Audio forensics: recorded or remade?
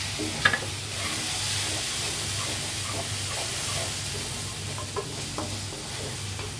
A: recorded